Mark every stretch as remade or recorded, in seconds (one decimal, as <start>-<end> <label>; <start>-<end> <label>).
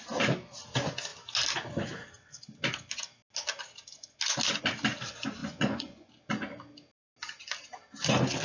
0.0-5.4 recorded; 5.4-6.1 remade; 6.1-8.4 recorded